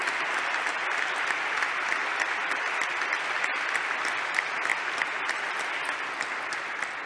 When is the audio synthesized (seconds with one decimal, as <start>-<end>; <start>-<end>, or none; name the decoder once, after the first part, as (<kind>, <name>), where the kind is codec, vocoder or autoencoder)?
none